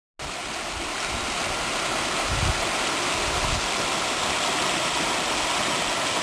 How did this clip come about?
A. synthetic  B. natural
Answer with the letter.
B